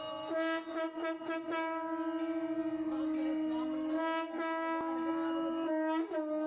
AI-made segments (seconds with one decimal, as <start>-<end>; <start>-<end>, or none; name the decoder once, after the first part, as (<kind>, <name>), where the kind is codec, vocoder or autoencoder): none